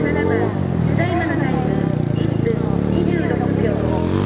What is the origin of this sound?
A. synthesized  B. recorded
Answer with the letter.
B